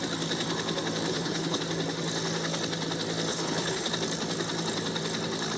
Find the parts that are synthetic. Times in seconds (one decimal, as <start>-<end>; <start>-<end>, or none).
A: 1.1-1.6; 3.3-3.9